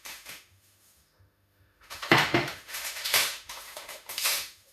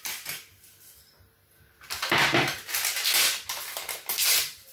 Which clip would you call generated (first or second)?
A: first